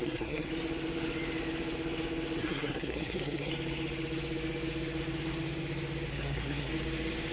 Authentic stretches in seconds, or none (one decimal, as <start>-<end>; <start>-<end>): 0.5-2.4; 3.5-6.1; 6.7-7.3